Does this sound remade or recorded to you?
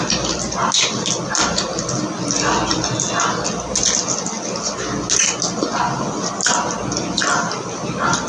recorded